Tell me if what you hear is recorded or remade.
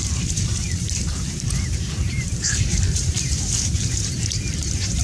remade